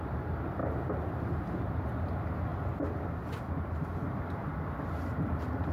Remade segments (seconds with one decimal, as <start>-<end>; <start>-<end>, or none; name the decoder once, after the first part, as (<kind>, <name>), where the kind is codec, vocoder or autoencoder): 0.6-1.2 (vocoder, BigVGAN v2)